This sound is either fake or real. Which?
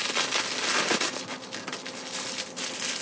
real